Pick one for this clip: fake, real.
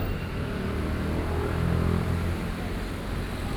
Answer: real